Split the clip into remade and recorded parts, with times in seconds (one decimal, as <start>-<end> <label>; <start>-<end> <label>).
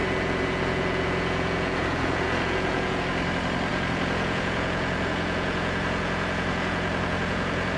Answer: 0.0-3.0 remade; 3.0-3.7 recorded; 3.7-7.8 remade